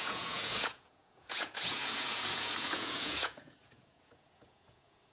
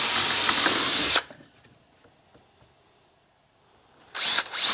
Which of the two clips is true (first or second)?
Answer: second